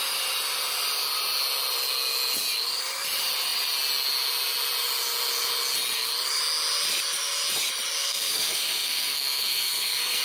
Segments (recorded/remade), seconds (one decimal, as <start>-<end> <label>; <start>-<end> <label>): 0.0-8.0 recorded; 8.0-10.2 remade